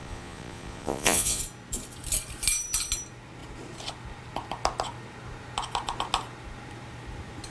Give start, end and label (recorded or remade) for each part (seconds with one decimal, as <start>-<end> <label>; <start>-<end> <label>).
0.0-1.4 remade; 1.4-7.5 recorded